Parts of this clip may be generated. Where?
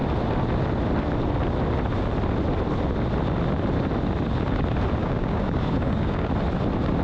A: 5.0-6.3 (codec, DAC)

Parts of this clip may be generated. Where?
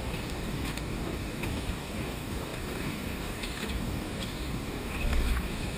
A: 0.0-5.8 (codec, DAC)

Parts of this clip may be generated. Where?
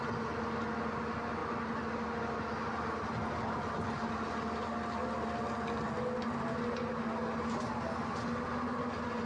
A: none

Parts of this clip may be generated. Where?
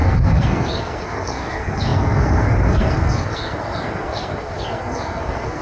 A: 0.0-5.6 (codec, SNAC)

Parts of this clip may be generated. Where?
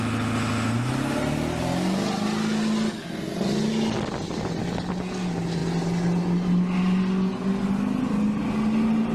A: none